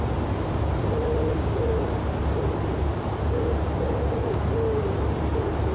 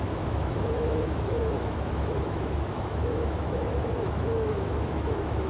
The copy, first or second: second